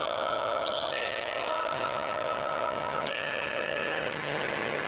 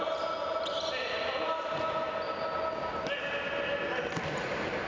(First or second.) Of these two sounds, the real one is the second